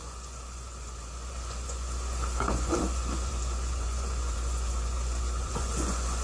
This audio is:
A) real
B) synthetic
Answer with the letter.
B